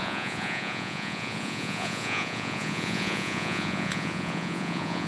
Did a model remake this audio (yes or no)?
yes